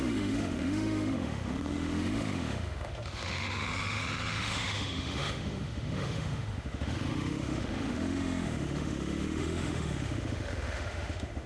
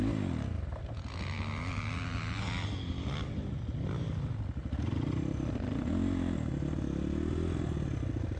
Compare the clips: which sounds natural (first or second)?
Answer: second